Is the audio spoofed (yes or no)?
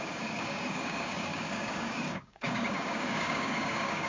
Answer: yes